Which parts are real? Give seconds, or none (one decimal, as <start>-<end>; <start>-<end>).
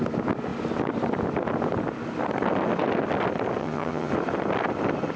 0.0-3.6; 4.1-5.2